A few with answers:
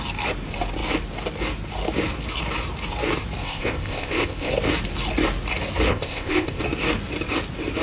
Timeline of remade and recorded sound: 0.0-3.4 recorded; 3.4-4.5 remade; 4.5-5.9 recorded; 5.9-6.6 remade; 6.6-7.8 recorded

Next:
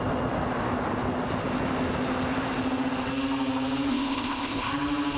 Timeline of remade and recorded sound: 0.0-3.9 recorded; 3.9-4.7 remade; 4.7-5.2 recorded

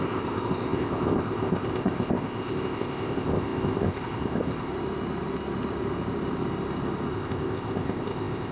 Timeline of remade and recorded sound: 0.0-4.7 remade; 4.7-7.1 recorded; 7.1-8.5 remade

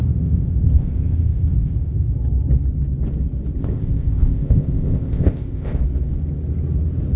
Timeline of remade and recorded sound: 0.0-2.1 remade; 2.1-3.6 recorded; 3.6-5.8 remade; 5.8-7.2 recorded

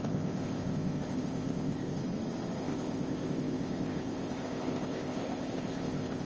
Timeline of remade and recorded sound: 0.0-2.0 remade; 2.0-2.6 recorded; 2.6-6.2 remade

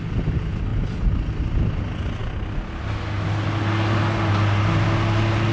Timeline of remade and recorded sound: 0.0-5.5 recorded

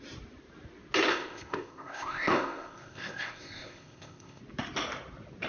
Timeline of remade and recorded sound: 0.0-1.1 recorded; 1.1-4.4 remade; 4.4-5.5 recorded

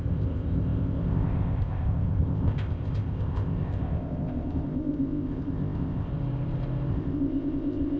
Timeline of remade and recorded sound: 0.0-6.1 remade; 6.1-6.9 recorded; 6.9-8.0 remade